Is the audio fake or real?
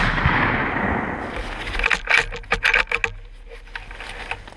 real